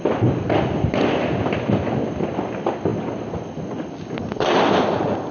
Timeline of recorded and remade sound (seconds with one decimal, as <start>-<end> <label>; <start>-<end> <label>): 0.0-5.3 recorded